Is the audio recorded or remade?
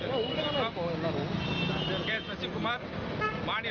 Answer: recorded